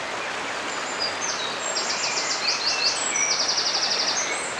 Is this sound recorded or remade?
recorded